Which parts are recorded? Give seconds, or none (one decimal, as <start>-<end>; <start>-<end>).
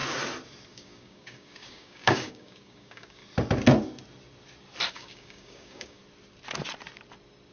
0.0-0.7; 3.2-4.9; 6.0-7.5